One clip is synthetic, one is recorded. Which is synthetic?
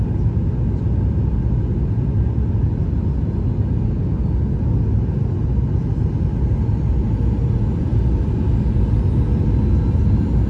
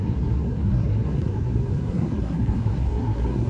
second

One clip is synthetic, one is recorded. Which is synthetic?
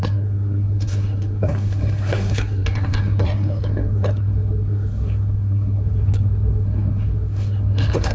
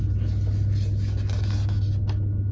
first